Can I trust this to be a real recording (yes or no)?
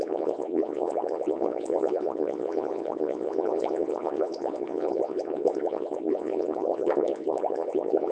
no